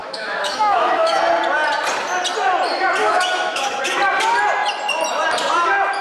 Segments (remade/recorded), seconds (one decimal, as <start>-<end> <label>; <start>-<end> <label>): 0.0-1.2 remade; 1.2-3.0 recorded; 3.0-3.8 remade; 3.8-6.0 recorded